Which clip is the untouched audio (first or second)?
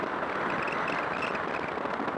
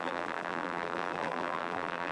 first